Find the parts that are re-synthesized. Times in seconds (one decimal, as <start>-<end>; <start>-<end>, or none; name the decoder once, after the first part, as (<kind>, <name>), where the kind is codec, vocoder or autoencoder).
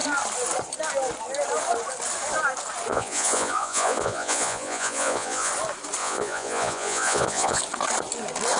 2.9-5.5 (vocoder, Vocos); 6.0-7.6